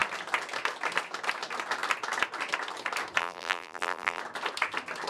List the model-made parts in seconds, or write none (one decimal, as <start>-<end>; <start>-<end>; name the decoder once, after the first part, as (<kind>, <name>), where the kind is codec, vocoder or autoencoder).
3.2-4.2 (vocoder, BigVGAN v2)